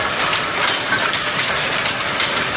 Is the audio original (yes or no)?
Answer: yes